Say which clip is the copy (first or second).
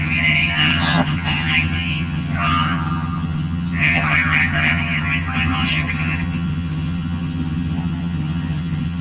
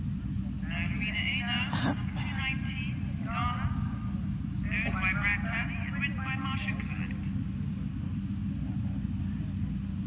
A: first